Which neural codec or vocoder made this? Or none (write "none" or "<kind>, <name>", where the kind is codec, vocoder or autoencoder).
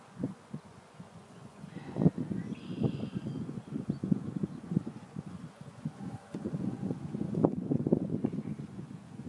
vocoder, Vocos